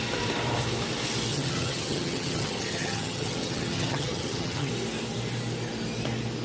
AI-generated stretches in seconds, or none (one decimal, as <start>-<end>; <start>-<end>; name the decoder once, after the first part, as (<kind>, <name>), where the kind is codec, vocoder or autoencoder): 1.3-4.7 (vocoder, HiFi-GAN)